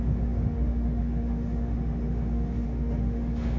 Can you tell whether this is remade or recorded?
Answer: remade